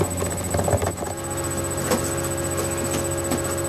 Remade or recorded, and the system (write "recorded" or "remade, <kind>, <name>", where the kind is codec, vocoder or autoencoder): recorded